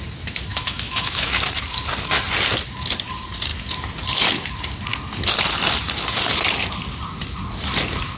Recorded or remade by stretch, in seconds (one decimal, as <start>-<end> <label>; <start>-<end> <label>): 0.0-0.5 recorded; 0.5-1.4 remade; 1.4-8.2 recorded